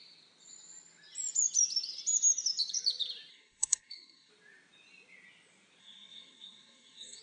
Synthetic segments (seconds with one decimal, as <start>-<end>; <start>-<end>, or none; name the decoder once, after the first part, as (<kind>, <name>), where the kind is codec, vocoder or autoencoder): 3.3-4.3 (codec, SNAC); 5.8-7.2